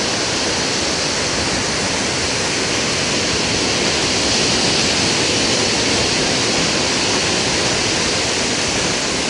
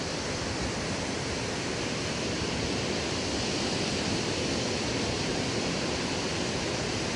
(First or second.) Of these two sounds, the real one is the first